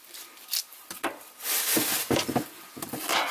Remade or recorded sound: recorded